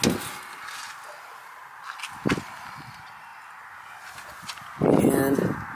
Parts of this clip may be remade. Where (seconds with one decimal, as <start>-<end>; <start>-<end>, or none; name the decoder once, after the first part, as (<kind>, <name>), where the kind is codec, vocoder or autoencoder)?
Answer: none